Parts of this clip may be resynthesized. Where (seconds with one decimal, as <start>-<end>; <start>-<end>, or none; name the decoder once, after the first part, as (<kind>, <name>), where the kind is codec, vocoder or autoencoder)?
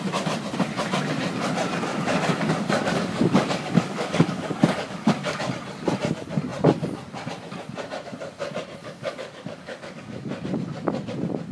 1.9-5.5 (codec, DAC); 8.8-10.3